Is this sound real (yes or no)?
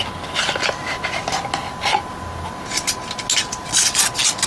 yes